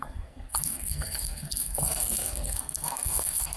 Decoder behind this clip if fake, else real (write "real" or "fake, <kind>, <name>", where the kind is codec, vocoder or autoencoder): fake, codec, SNAC